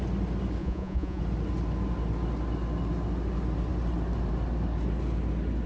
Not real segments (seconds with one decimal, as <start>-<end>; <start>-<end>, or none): 0.6-1.2